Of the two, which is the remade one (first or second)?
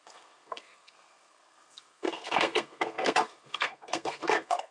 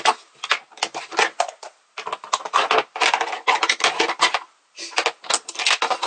first